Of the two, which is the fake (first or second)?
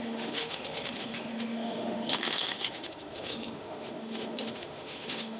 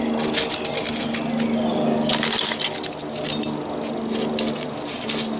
first